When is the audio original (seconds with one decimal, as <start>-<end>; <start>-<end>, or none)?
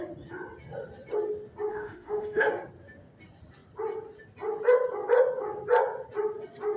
0.0-1.7; 2.5-6.8